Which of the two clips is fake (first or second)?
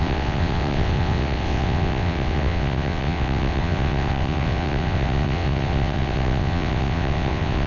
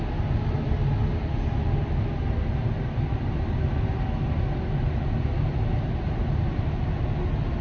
first